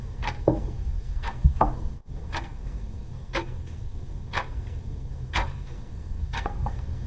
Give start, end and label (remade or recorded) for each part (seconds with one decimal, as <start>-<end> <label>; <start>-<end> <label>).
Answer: 0.0-7.1 remade